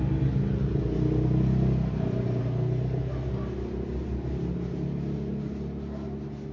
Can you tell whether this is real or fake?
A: real